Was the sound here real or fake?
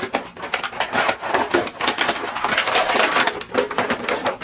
real